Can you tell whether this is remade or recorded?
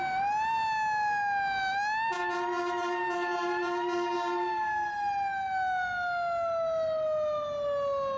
recorded